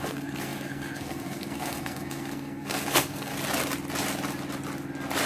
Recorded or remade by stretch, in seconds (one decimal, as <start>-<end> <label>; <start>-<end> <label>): 0.0-3.3 remade; 3.3-5.3 recorded